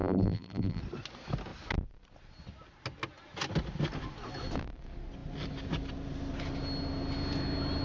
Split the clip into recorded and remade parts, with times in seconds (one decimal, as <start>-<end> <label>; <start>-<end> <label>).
0.0-0.8 remade; 0.8-7.8 recorded